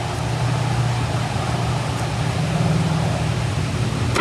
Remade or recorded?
recorded